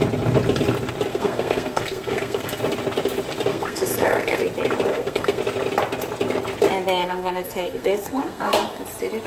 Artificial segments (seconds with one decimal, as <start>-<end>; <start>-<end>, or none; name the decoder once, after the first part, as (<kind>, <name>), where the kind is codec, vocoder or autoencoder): 1.1-2.6 (codec, SNAC); 3.5-4.4; 4.9-5.4; 7.0-8.8

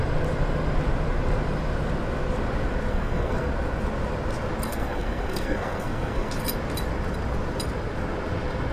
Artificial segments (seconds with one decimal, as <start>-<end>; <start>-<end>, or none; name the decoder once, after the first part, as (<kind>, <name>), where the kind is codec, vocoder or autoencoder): 2.9-3.5 (codec, SNAC); 4.7-6.3